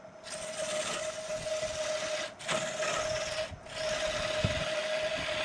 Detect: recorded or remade recorded